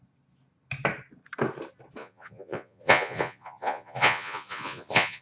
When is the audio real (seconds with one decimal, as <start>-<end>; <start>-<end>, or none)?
0.0-2.0